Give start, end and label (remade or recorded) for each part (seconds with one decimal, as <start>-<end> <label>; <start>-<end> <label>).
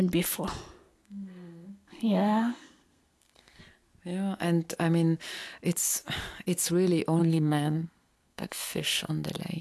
0.0-0.8 recorded; 0.8-3.6 remade; 3.6-7.2 recorded; 7.2-9.1 remade; 9.1-9.6 recorded